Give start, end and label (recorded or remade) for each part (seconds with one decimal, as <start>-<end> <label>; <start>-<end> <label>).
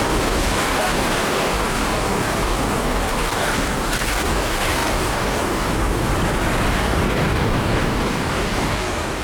0.0-6.1 remade; 6.1-6.7 recorded; 6.7-9.2 remade